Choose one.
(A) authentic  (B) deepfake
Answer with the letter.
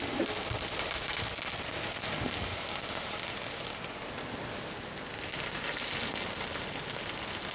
A